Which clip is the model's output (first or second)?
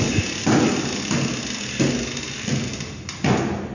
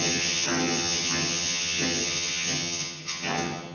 second